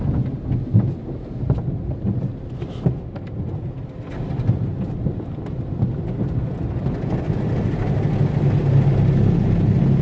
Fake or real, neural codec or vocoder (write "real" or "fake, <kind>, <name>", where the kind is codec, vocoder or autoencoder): real